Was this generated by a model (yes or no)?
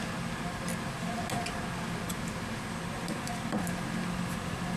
no